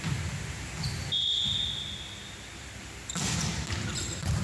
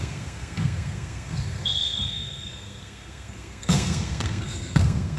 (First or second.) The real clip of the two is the first